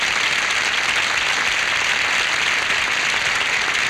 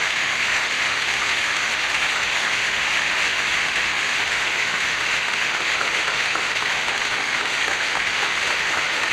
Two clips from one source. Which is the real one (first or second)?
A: first